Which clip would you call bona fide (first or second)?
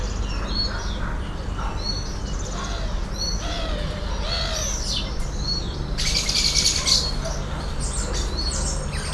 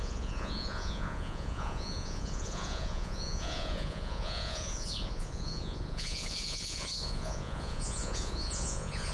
first